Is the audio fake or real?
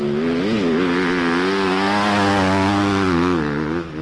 real